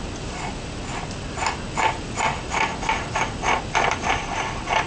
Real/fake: real